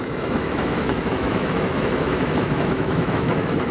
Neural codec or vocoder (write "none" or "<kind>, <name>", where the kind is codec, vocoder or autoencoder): autoencoder, DAC-VAE